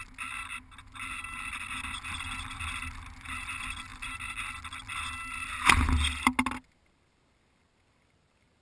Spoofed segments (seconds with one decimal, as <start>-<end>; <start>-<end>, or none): none